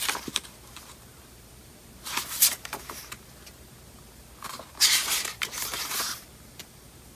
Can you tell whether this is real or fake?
fake